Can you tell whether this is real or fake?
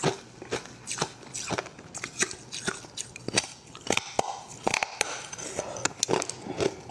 real